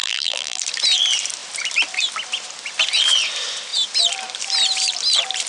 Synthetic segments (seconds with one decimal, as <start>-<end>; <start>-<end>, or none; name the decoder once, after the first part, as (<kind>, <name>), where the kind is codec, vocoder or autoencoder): 0.0-0.6 (vocoder, BigVGAN v2)